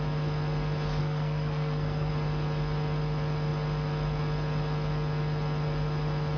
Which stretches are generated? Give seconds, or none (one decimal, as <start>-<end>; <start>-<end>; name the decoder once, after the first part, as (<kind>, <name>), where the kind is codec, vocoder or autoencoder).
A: 1.0-2.1 (codec, SNAC)